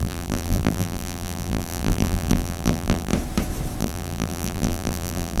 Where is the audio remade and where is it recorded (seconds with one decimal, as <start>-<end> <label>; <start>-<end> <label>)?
0.0-3.1 remade; 3.1-3.8 recorded; 3.8-5.4 remade